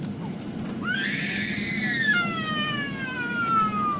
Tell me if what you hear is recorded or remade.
recorded